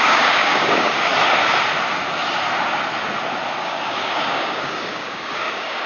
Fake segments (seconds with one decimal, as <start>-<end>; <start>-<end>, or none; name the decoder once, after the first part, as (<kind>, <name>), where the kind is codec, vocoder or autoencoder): 0.0-1.1 (codec, DAC); 3.6-5.9